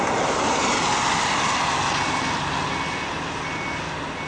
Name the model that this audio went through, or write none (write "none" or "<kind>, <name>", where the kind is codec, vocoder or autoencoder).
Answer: none